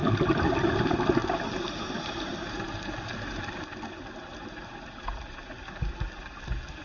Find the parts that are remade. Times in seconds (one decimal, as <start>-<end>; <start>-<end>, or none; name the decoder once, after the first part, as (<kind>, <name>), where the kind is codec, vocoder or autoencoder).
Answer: 4.3-5.9 (vocoder, BigVGAN v2)